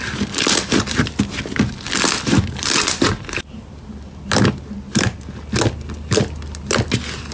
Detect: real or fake real